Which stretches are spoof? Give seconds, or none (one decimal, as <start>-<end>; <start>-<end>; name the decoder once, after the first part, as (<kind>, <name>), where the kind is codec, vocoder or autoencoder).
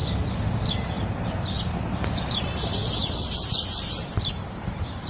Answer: none